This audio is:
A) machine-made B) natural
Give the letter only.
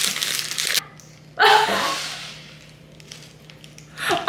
B